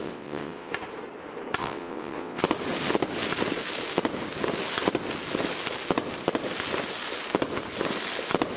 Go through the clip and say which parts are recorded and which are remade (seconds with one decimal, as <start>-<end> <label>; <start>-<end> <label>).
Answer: 0.0-0.7 remade; 0.7-1.6 recorded; 1.6-2.4 remade; 2.4-8.6 recorded